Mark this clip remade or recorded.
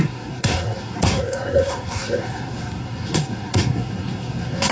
remade